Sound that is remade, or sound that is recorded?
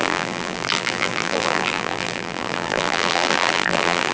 remade